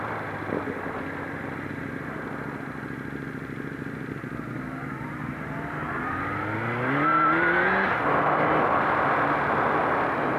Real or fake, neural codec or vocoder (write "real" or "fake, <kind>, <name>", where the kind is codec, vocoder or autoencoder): real